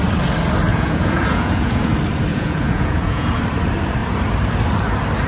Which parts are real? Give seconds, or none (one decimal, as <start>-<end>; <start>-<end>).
0.0-0.7; 1.9-2.3; 3.4-5.3